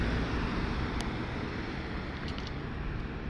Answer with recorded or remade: recorded